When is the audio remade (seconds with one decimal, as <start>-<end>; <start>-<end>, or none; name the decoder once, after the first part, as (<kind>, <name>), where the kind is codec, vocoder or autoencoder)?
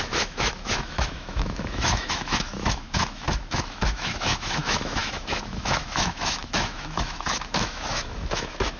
0.0-8.8 (autoencoder, DAC-VAE)